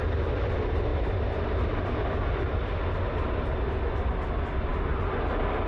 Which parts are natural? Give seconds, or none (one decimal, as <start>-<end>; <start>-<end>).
0.0-5.7

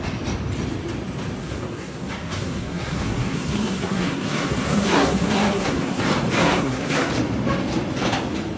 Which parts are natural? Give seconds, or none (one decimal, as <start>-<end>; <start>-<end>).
0.0-1.4; 6.0-6.4; 7.1-8.6

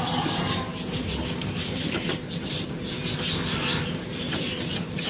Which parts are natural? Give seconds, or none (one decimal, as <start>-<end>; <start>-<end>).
0.7-3.8

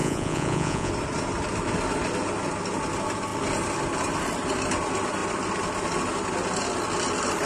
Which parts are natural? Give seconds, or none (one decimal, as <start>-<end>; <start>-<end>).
0.9-7.5

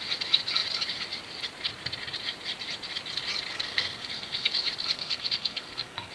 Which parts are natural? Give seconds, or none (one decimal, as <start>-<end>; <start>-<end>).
0.0-3.5; 4.5-4.9

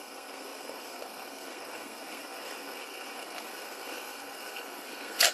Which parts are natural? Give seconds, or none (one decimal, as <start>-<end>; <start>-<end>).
none